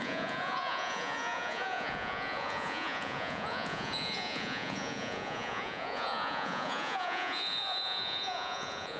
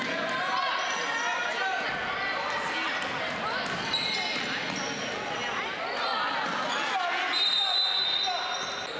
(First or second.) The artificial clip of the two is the first